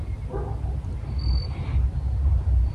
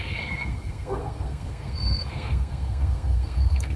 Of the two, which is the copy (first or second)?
second